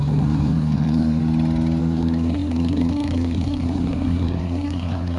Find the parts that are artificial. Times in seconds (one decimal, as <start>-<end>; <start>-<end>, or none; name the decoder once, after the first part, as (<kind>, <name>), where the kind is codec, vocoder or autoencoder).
0.0-1.2 (codec, SNAC); 1.8-5.2